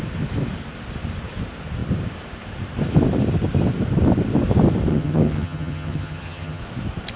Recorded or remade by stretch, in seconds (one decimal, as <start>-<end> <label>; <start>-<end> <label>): 0.0-4.9 recorded; 4.9-6.6 remade; 6.6-7.2 recorded